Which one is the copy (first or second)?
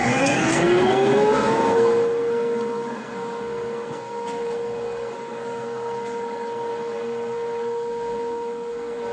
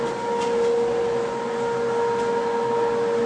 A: first